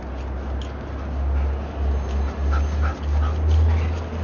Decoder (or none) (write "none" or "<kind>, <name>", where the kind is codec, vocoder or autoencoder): none